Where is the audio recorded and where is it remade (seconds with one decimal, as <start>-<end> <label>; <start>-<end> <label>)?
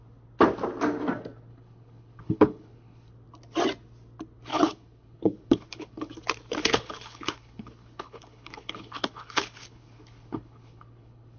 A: 0.0-1.5 recorded; 1.5-3.1 remade; 3.1-4.5 recorded; 4.5-6.1 remade; 6.1-6.6 recorded; 6.6-11.4 remade